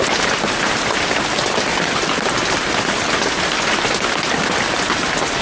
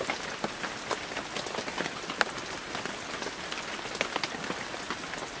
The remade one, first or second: first